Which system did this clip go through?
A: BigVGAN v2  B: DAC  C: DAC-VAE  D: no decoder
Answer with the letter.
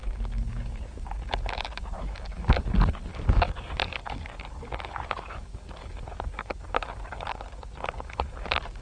B